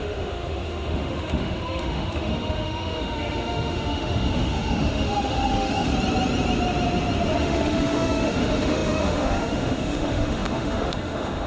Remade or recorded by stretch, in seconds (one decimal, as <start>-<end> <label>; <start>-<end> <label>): 0.0-5.9 remade; 5.9-7.4 recorded; 7.4-11.5 remade